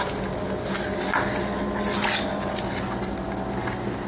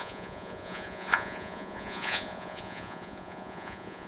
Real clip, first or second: first